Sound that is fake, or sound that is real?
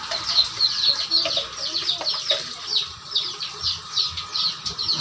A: real